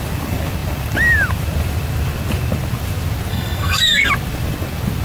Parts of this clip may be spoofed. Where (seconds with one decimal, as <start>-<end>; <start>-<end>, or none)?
3.3-4.1